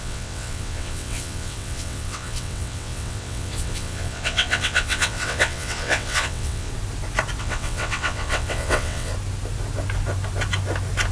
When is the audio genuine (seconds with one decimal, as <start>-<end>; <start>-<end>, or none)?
6.7-7.4; 9.1-11.1